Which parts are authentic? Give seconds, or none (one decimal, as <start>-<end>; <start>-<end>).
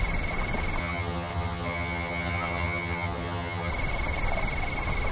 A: 0.0-0.8; 3.7-5.1